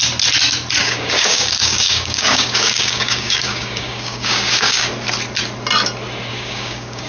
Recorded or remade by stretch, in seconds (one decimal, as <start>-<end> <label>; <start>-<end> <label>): 0.0-0.8 recorded; 0.8-4.9 remade; 4.9-6.3 recorded; 6.3-7.1 remade